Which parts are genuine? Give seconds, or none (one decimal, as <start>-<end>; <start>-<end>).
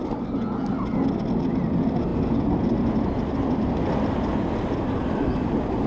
0.0-5.9